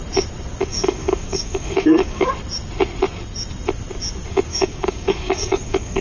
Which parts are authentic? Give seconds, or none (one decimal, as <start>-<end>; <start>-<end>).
0.0-0.7; 2.3-4.5